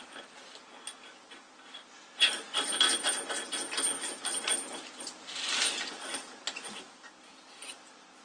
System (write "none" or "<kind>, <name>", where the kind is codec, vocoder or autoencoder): none